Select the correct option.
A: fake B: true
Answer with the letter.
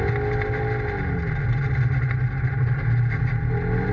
B